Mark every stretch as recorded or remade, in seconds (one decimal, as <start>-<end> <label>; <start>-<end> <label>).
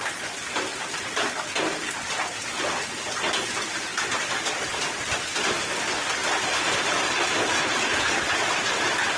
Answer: 0.0-9.2 recorded